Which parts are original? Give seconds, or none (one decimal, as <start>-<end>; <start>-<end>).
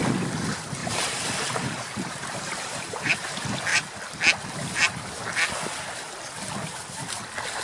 0.0-0.8; 3.3-3.7; 4.2-7.6